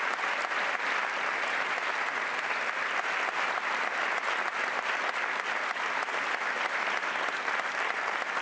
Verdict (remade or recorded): recorded